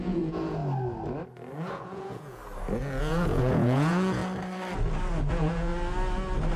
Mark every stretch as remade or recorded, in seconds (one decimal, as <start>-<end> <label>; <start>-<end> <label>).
0.0-0.6 remade; 0.6-1.7 recorded; 1.7-2.4 remade; 2.4-3.0 recorded; 3.0-4.2 remade; 4.2-5.3 recorded; 5.3-5.7 remade; 5.7-6.6 recorded